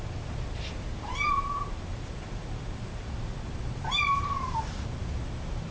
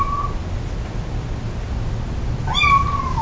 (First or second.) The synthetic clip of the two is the first